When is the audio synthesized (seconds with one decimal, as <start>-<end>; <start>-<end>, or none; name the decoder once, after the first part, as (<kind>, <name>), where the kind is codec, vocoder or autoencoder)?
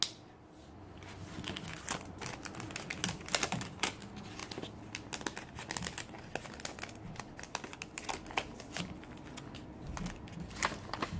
none